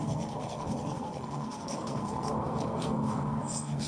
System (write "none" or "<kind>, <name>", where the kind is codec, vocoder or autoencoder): codec, SNAC